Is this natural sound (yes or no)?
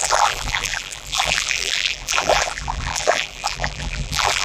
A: no